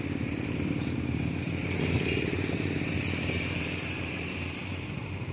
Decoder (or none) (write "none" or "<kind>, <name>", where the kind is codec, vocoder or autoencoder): vocoder, BigVGAN v2